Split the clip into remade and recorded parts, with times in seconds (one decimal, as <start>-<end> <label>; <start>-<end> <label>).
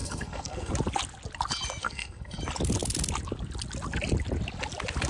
0.0-0.7 remade; 0.7-1.8 recorded; 1.8-2.4 remade; 2.4-5.1 recorded